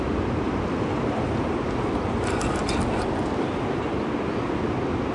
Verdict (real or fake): real